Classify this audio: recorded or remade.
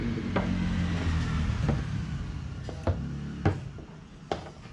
recorded